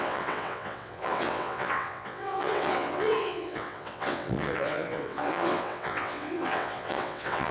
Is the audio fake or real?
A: fake